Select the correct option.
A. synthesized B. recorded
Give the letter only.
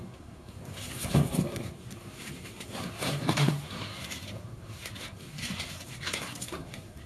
A